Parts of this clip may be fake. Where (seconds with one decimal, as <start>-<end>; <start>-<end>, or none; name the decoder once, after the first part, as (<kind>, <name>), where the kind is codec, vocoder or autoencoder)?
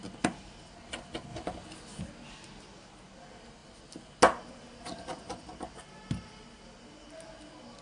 none